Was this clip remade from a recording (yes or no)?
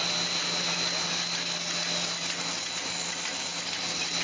no